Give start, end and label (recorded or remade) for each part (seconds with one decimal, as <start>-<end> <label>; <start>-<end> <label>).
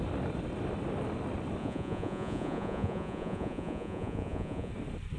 0.0-1.6 recorded; 1.6-4.7 remade; 4.7-5.2 recorded